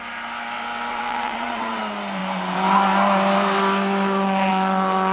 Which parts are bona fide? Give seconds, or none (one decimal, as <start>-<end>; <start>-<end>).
0.0-0.9; 1.8-5.1